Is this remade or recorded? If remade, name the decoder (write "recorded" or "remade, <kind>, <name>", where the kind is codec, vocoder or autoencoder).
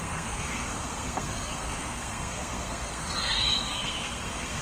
remade, codec, SNAC